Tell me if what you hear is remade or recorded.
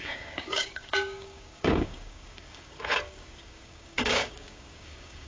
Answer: remade